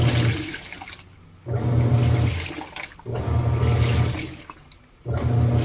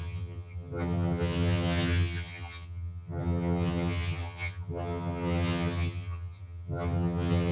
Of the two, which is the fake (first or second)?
second